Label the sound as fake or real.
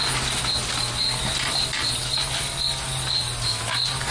real